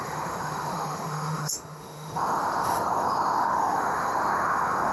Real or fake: fake